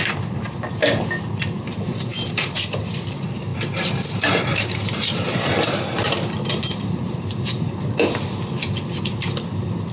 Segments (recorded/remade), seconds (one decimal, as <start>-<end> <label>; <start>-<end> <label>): 0.0-2.1 recorded; 2.1-2.8 remade; 2.8-3.5 recorded; 3.5-7.7 remade; 7.7-9.9 recorded